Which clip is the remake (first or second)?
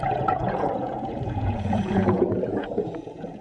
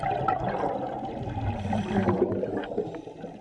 first